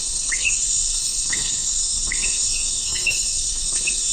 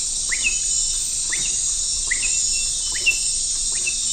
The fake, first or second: first